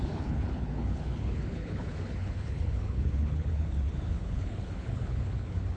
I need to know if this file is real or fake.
fake